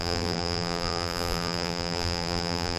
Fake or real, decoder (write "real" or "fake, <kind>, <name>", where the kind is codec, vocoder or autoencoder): fake, vocoder, BigVGAN v2